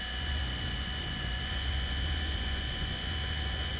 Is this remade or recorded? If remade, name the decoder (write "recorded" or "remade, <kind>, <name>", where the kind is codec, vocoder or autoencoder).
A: remade, vocoder, Vocos